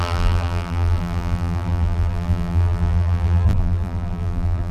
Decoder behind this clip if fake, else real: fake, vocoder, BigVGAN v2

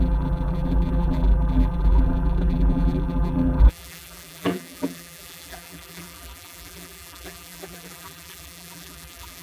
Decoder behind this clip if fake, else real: fake, vocoder, BigVGAN v2